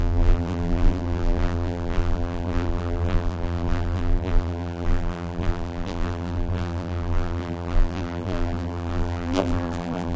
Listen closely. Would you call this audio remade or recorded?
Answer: remade